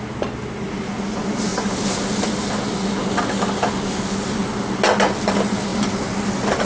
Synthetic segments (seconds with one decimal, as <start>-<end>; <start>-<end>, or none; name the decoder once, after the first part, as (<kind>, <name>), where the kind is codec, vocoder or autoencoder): none